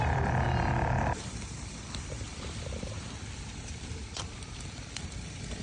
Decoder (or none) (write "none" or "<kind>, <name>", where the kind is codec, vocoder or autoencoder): vocoder, BigVGAN v2